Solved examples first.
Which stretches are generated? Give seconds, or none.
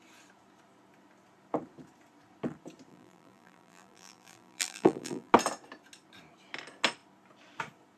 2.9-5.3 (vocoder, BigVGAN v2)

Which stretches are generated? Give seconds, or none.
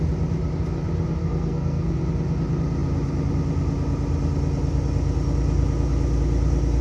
1.2-2.0 (codec, SNAC)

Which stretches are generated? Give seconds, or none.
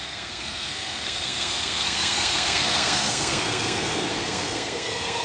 0.0-5.2 (codec, SNAC)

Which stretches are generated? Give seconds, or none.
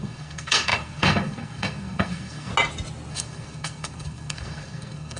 0.0-2.5 (codec, SNAC); 3.1-5.2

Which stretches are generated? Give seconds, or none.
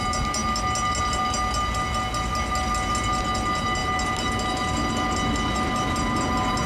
none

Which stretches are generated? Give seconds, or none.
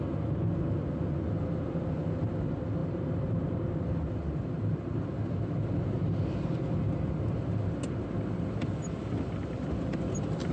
2.8-3.9 (vocoder, BigVGAN v2)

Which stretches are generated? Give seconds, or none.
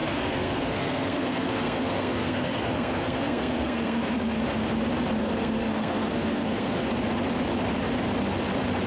0.0-4.4 (codec, SNAC); 5.2-6.9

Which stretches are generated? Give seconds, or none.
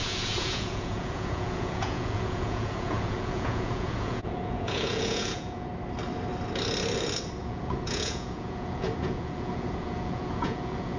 0.0-5.7 (vocoder, Vocos); 7.4-11.0